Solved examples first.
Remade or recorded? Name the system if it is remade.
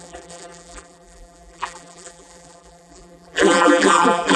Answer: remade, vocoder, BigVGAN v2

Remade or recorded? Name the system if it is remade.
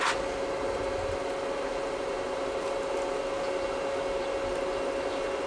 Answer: recorded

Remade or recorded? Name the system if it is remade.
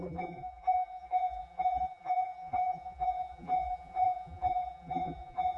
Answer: remade, vocoder, BigVGAN v2